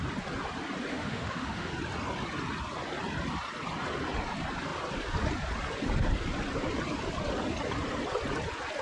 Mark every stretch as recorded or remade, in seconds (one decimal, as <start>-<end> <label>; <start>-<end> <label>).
0.0-0.9 recorded; 0.9-1.7 remade; 1.7-8.8 recorded